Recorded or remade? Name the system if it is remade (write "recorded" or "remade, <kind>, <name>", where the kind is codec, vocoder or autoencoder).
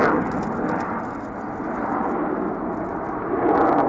recorded